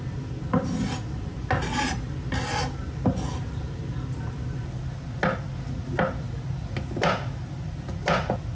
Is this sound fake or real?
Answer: real